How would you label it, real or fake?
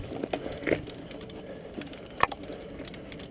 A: real